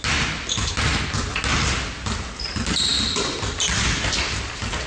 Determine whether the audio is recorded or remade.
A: recorded